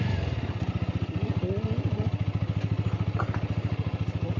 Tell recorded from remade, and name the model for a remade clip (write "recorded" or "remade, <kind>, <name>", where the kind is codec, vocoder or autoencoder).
recorded